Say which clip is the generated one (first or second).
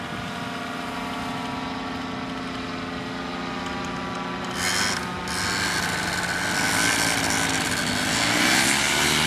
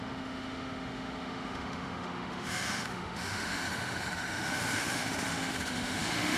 second